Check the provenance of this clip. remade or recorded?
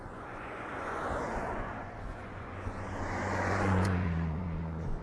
remade